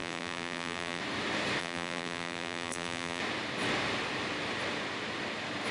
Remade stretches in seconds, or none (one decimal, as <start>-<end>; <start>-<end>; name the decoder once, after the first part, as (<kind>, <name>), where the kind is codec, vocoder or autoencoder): 0.0-1.0 (vocoder, BigVGAN v2); 1.6-3.2